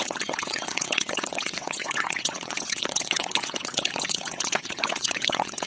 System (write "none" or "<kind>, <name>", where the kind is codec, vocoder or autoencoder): vocoder, WaveNeXt